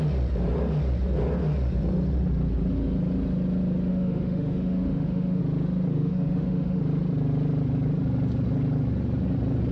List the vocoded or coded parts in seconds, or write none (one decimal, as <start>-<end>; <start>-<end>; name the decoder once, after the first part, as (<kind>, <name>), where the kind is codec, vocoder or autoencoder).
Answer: 3.9-5.4 (autoencoder, DAC-VAE); 5.9-6.8